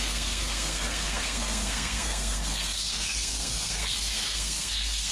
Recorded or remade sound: remade